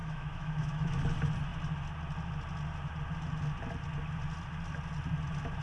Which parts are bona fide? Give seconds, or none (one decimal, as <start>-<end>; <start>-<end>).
1.0-5.6